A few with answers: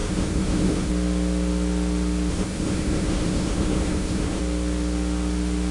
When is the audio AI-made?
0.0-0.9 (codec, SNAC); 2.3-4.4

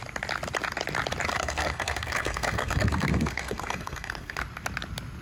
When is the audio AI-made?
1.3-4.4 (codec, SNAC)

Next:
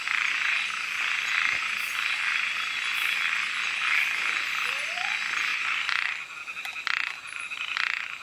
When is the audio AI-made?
none

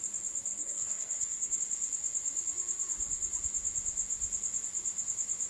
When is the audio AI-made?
0.5-1.6 (codec, SNAC)

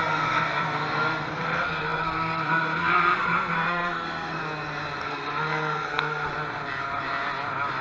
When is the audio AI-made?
0.0-4.4 (codec, SNAC); 5.0-6.3

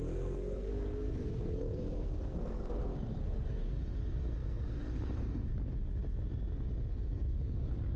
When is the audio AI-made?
0.0-5.5 (codec, SNAC); 6.9-8.0

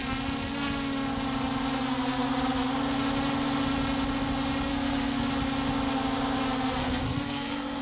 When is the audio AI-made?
4.7-5.3 (codec, SNAC); 6.8-7.8